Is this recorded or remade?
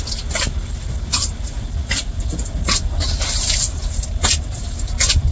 recorded